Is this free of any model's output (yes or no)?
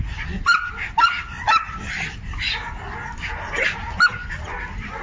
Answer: yes